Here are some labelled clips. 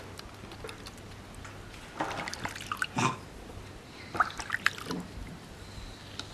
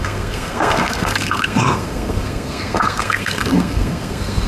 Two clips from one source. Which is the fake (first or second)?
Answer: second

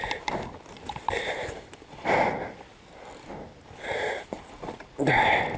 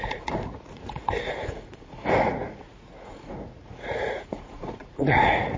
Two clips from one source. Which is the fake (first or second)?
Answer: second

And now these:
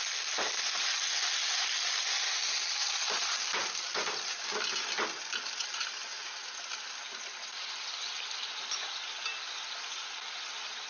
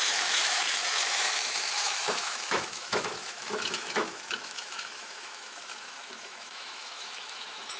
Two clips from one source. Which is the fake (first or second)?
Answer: second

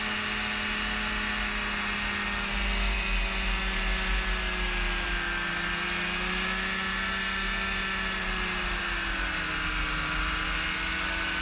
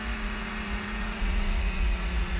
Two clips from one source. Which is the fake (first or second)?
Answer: second